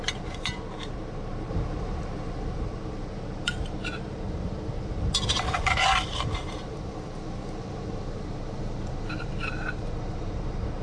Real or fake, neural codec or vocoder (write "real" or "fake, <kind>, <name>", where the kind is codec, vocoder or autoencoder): fake, vocoder, BigVGAN v2